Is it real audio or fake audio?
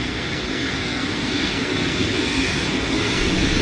fake